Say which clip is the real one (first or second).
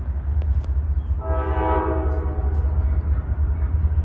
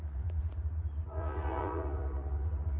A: first